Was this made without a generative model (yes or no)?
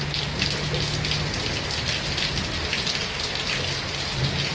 yes